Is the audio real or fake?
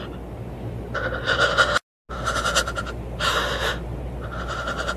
real